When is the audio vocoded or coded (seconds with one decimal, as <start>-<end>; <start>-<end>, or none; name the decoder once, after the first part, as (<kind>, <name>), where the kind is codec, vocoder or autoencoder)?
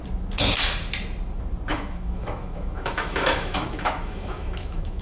1.7-5.0 (autoencoder, DAC-VAE)